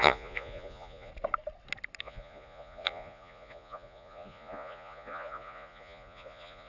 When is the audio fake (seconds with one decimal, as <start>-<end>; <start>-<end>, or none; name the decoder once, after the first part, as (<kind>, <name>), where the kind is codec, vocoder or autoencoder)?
0.0-1.1 (vocoder, Vocos); 2.0-6.7